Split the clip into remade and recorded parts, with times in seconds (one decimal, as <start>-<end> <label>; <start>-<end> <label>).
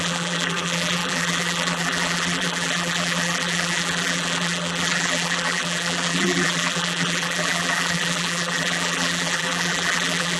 0.0-10.4 remade